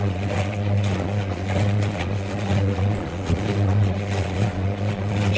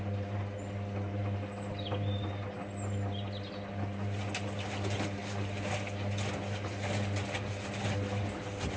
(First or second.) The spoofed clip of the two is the first